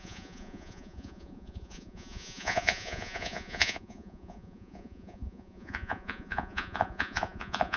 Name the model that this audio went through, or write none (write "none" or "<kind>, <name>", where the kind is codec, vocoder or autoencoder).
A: vocoder, Vocos